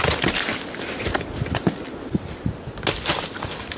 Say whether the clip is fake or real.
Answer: real